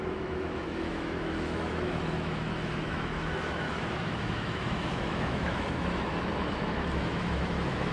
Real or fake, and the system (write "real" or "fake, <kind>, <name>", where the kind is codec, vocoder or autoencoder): fake, autoencoder, DAC-VAE